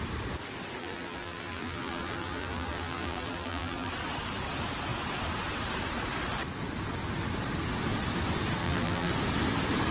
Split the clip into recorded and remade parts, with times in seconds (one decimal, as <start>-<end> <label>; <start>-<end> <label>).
0.0-0.8 recorded; 0.8-3.9 remade; 3.9-8.6 recorded; 8.6-9.1 remade; 9.1-9.9 recorded